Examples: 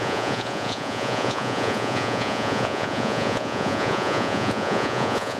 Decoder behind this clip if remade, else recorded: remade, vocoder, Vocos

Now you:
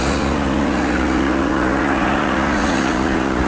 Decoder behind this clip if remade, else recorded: remade, vocoder, Vocos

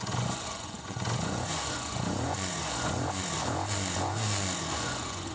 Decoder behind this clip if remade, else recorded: remade, vocoder, Vocos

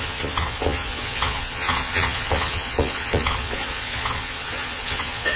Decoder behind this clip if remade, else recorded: remade, vocoder, Vocos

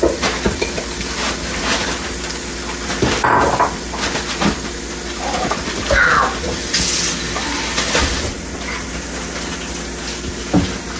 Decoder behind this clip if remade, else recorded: recorded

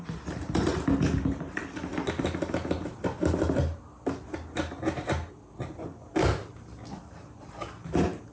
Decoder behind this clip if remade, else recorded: recorded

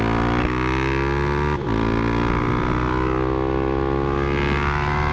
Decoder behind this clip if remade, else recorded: recorded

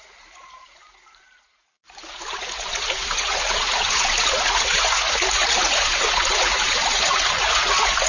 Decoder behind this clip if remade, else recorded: remade, vocoder, Vocos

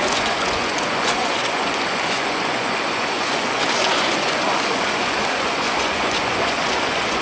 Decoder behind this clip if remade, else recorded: remade, vocoder, Vocos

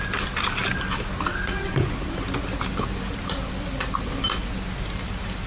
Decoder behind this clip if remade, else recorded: recorded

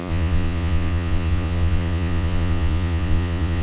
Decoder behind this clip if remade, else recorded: remade, vocoder, Vocos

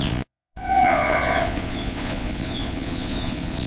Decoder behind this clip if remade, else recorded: remade, vocoder, Vocos